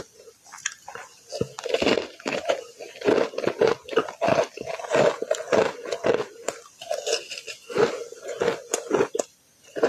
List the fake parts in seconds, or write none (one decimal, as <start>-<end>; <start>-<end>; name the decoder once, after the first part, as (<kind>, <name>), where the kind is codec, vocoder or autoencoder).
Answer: 4.0-4.7 (vocoder, BigVGAN v2); 6.4-8.5